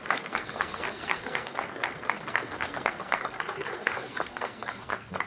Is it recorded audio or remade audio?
remade